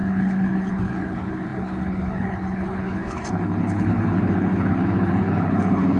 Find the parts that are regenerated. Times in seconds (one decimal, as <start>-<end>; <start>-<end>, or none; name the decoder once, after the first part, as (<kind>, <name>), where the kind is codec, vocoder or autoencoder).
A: 0.0-6.0 (codec, HILCodec)